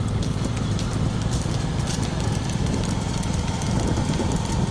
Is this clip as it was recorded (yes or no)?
no